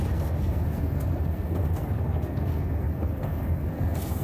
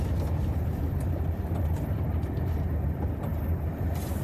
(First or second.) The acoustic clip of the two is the second